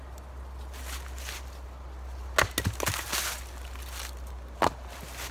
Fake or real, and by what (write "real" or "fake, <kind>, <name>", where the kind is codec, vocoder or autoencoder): real